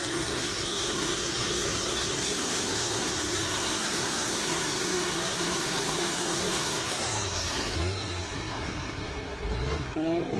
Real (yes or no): no